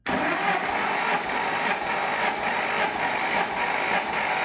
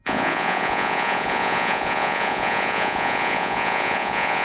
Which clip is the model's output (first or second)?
second